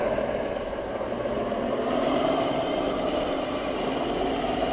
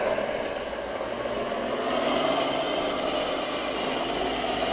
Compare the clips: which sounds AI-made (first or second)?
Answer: first